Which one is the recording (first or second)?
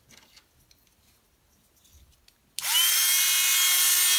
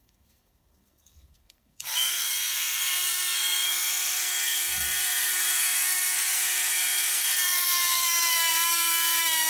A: first